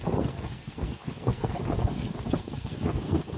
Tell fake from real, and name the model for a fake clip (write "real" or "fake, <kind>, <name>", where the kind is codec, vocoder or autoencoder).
fake, codec, SNAC